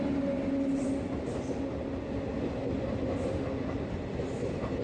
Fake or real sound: real